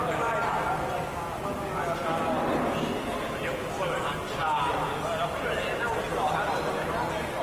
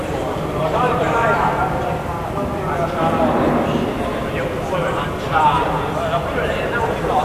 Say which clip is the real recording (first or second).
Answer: first